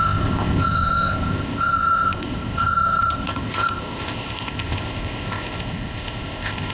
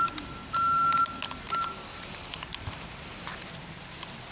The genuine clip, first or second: second